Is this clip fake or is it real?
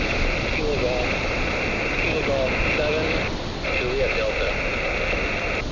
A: real